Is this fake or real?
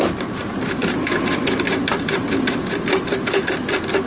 real